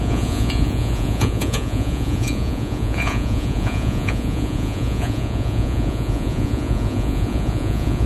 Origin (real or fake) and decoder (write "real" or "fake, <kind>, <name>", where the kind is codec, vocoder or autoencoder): fake, vocoder, Vocos